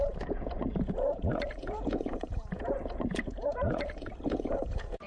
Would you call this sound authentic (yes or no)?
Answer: no